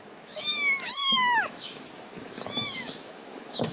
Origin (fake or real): fake